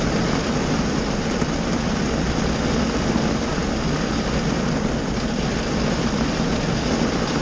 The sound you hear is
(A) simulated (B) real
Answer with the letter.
B